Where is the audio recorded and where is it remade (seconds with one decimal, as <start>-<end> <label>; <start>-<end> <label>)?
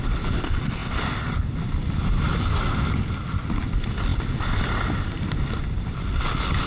0.0-6.7 recorded